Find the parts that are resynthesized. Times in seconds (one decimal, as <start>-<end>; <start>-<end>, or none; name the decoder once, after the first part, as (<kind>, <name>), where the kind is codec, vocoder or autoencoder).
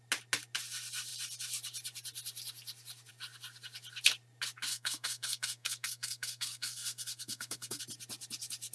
4.7-7.8 (codec, SNAC)